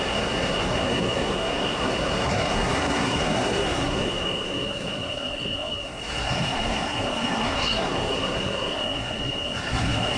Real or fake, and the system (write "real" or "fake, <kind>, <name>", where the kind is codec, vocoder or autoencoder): fake, codec, SNAC